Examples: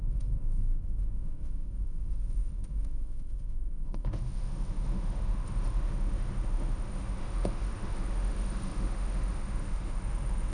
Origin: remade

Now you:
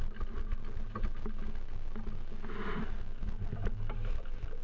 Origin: recorded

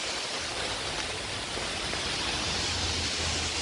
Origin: recorded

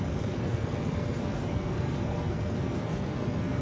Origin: remade